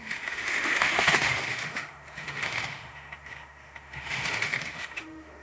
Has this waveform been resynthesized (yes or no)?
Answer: yes